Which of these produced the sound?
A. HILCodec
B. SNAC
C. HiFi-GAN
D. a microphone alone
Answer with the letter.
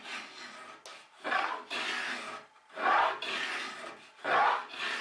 D